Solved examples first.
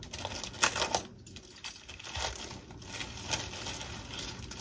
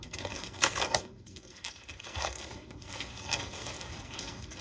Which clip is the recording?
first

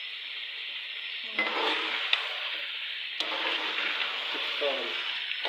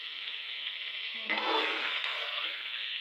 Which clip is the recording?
first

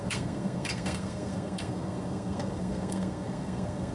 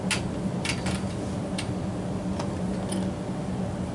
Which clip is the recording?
second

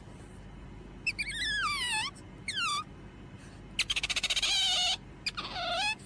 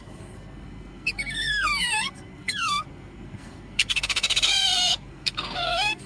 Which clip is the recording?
first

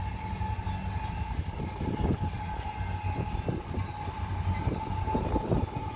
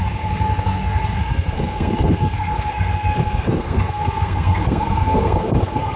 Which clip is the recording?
first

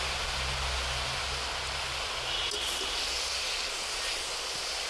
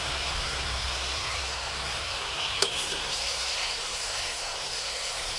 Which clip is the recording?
first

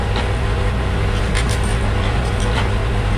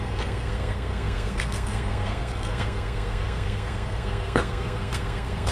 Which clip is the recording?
first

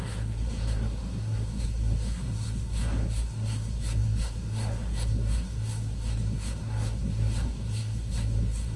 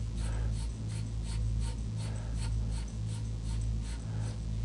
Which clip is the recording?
second